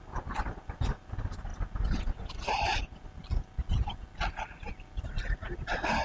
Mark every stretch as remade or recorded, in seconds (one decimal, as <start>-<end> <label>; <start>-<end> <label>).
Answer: 0.0-6.0 recorded